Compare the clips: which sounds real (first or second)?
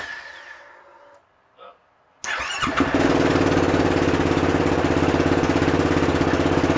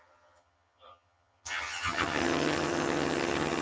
first